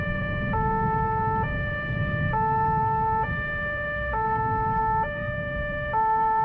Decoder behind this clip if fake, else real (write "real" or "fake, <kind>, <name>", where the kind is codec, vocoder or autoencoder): fake, vocoder, BigVGAN v2